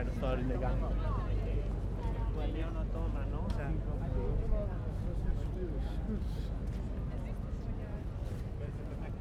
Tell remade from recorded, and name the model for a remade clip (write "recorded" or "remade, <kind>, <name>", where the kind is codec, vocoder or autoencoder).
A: recorded